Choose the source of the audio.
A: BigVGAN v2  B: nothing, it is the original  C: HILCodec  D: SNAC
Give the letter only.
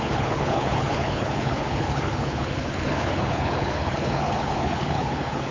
C